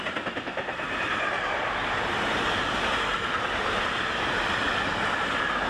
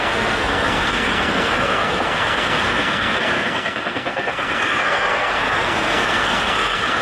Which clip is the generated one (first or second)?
second